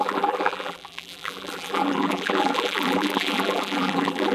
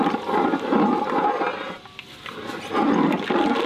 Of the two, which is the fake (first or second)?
first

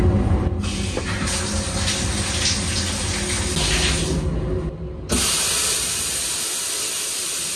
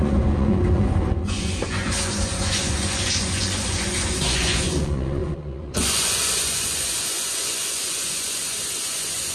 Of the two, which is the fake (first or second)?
second